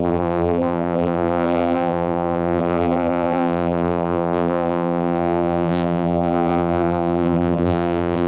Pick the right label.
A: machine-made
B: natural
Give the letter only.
A